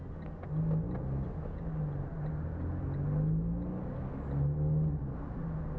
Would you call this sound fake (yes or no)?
no